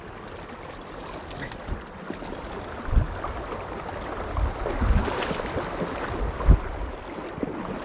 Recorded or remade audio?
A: recorded